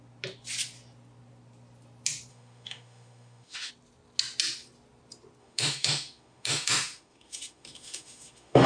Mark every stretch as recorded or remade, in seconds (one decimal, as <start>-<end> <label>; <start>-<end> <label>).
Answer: 0.0-2.3 recorded; 2.3-3.7 remade; 3.7-5.4 recorded; 5.4-8.7 remade